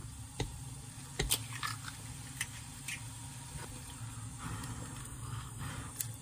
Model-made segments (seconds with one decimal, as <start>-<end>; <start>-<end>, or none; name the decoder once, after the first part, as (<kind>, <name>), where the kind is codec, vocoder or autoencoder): 5.0-5.7 (codec, SNAC)